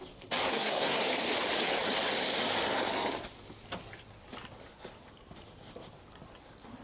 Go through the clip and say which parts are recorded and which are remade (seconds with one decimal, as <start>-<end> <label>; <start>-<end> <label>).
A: 0.0-0.5 recorded; 0.5-1.1 remade; 1.1-6.8 recorded